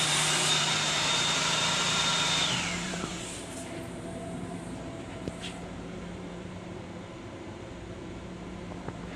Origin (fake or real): fake